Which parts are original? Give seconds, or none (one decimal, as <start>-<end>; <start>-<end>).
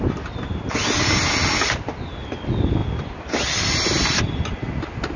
0.0-2.8; 4.2-5.2